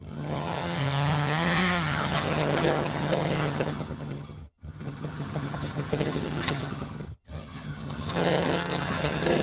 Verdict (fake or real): fake